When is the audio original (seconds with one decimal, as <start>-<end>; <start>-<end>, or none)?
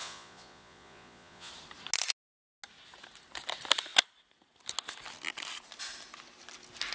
1.5-6.9